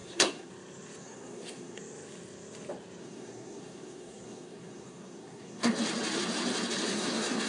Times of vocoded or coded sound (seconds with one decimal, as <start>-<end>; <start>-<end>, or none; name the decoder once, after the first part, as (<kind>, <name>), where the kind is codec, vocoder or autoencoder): 0.0-0.5 (codec, SNAC); 1.0-1.8; 3.0-5.7; 6.9-7.5